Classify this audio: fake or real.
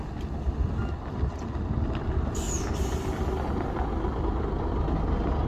real